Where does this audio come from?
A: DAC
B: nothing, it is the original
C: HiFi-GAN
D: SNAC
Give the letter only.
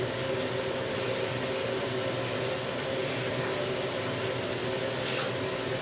B